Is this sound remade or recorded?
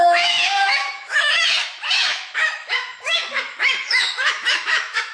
remade